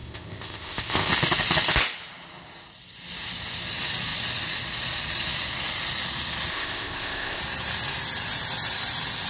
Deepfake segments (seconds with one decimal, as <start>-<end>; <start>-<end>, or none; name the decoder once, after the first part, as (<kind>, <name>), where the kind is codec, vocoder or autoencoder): 0.0-1.1 (codec, ZipCodec); 6.5-7.4